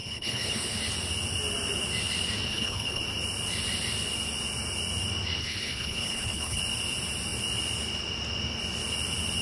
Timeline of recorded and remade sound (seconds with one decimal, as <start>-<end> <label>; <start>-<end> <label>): 0.0-0.8 remade; 0.8-2.5 recorded; 2.5-3.0 remade; 3.0-5.4 recorded; 5.4-6.6 remade; 6.6-9.4 recorded